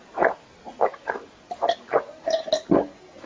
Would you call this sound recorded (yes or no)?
yes